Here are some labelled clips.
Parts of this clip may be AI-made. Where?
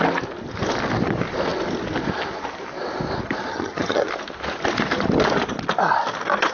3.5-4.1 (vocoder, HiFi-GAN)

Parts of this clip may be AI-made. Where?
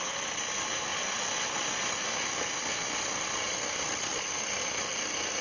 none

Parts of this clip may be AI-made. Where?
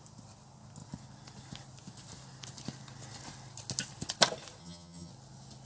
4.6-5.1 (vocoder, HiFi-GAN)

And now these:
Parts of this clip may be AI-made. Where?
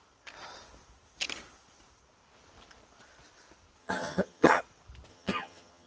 3.8-4.6 (vocoder, HiFi-GAN); 5.1-5.9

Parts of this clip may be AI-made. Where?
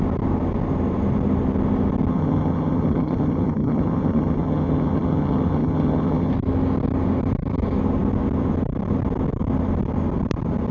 2.1-6.3 (vocoder, HiFi-GAN)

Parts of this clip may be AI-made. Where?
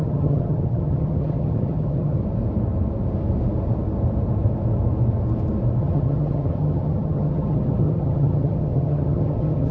0.0-2.2 (vocoder, HiFi-GAN); 5.8-9.7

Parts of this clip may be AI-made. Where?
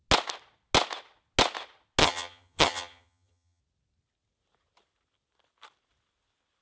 2.0-3.6 (vocoder, HiFi-GAN)